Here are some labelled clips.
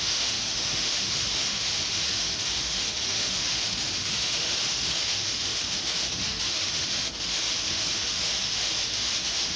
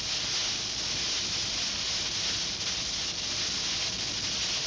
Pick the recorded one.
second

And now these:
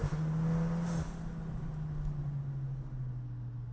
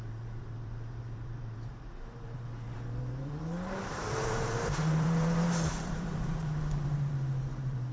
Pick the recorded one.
first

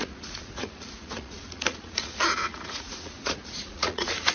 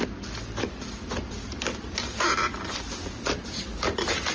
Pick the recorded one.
second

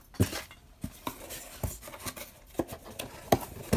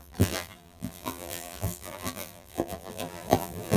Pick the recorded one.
first